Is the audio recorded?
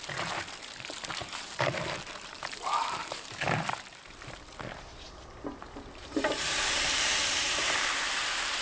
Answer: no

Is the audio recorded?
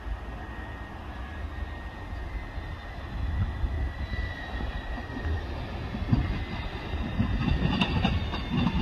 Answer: yes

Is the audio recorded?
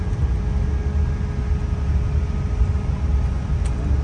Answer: yes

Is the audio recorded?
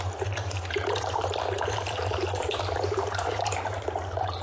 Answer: no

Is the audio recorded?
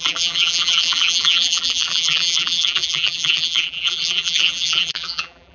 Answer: no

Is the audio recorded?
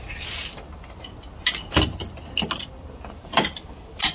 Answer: yes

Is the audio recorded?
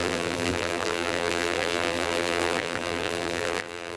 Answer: no